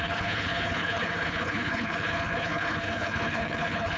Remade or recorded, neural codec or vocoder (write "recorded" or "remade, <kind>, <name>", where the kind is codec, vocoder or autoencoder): remade, codec, HILCodec